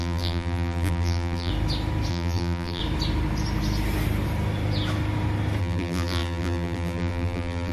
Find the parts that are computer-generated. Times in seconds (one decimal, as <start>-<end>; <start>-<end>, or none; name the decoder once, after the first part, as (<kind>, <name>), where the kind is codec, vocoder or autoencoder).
0.0-1.5 (vocoder, BigVGAN v2); 2.1-2.8; 5.6-7.7